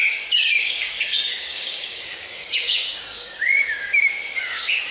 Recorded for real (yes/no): no